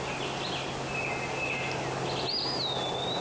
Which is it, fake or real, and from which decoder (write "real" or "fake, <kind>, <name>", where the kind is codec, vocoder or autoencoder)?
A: real